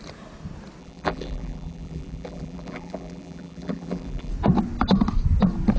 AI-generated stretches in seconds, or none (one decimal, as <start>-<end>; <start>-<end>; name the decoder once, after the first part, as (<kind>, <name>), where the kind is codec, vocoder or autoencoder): 0.8-4.3 (vocoder, BigVGAN v2)